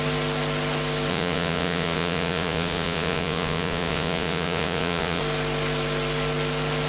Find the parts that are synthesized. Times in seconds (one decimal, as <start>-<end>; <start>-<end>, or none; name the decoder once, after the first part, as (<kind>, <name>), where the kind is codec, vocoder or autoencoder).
1.1-5.2 (vocoder, Vocos)

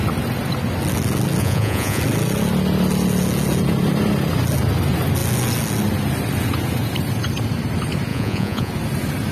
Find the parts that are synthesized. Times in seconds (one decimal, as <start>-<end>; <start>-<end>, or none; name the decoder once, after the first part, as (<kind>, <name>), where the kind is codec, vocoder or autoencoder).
1.4-2.0 (vocoder, Vocos); 8.1-8.7

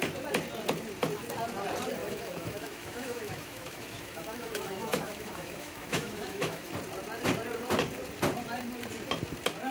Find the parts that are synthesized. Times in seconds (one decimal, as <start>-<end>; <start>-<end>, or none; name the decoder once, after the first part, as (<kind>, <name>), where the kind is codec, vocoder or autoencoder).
2.0-6.7 (autoencoder, DAC-VAE)

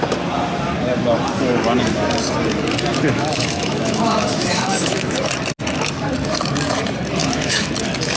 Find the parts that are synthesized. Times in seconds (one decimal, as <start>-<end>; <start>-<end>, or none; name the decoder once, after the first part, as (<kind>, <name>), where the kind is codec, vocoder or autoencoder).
2.9-5.2 (autoencoder, DAC-VAE); 7.2-7.7

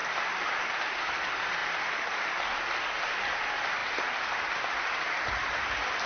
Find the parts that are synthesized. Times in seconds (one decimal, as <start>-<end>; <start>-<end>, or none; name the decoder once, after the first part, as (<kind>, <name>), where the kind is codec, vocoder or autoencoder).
1.0-1.6 (vocoder, BigVGAN v2); 3.2-6.1